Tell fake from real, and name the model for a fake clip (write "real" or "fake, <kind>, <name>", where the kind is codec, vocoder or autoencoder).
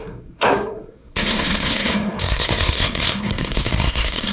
fake, codec, SNAC